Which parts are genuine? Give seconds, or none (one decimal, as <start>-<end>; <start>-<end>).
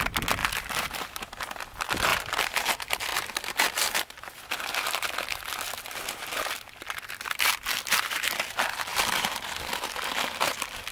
0.0-0.4; 1.0-2.1; 2.7-8.9; 9.7-10.9